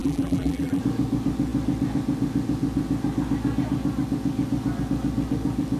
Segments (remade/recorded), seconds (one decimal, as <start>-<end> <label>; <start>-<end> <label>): 0.0-0.8 remade; 0.8-5.8 recorded